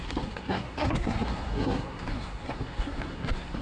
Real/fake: fake